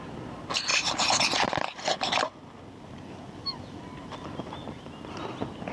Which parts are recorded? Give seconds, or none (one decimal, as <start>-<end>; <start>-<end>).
0.0-5.7